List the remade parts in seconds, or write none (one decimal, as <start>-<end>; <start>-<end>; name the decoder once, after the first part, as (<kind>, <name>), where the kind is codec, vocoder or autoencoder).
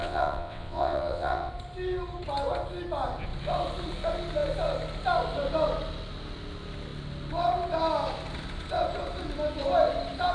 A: 0.0-1.5 (vocoder, WaveNeXt)